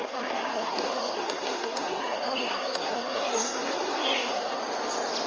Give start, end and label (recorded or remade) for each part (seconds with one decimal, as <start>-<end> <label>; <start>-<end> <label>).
0.0-4.6 remade; 4.6-5.3 recorded